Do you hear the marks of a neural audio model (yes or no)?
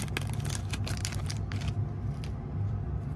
no